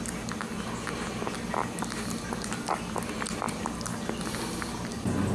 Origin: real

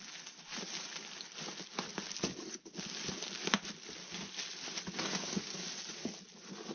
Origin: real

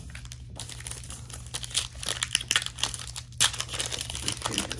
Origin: real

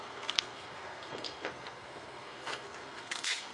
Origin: fake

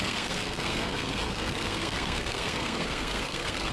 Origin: fake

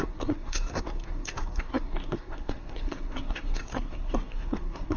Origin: fake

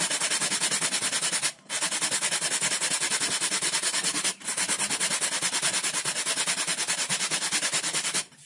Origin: real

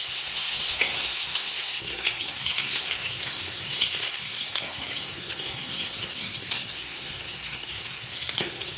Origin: fake